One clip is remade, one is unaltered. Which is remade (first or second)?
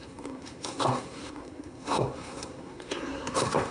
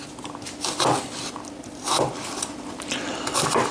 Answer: first